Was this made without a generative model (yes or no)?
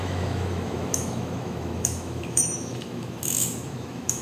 no